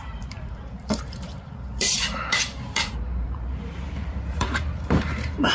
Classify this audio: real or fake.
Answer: fake